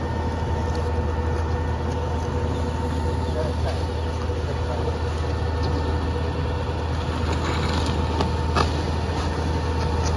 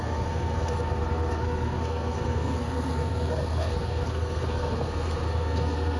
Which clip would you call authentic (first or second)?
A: first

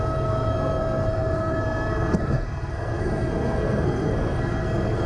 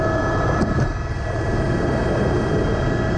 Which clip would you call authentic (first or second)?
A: second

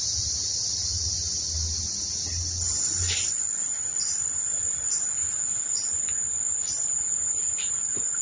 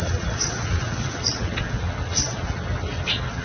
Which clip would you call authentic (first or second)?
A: first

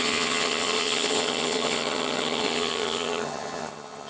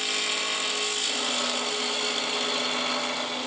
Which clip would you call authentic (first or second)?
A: second